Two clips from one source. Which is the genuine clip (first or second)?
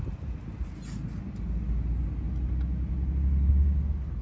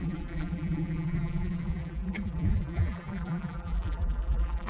first